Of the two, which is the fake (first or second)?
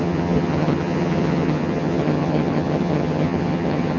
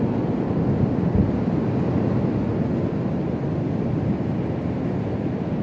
first